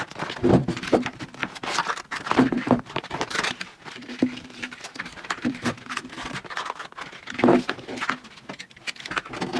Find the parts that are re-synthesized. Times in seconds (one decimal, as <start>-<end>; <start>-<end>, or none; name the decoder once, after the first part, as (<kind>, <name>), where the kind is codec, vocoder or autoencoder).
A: 0.6-5.8 (vocoder, BigVGAN v2)